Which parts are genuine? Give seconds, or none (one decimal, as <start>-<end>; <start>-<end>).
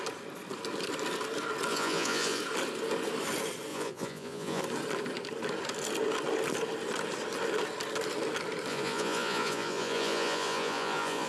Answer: 0.0-1.7; 2.4-3.7; 4.6-8.7